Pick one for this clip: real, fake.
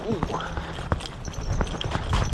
real